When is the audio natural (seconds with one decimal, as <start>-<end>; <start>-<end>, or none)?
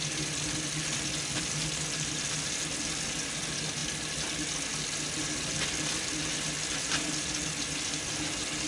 0.0-8.7